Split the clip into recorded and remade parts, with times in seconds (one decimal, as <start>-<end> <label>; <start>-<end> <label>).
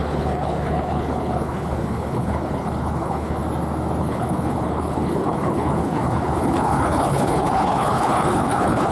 0.0-3.4 remade; 3.4-4.0 recorded; 4.0-8.9 remade